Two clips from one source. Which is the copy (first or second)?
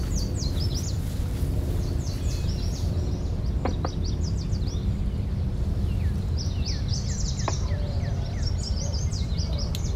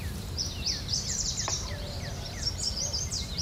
second